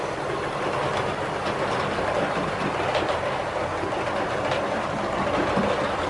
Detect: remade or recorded recorded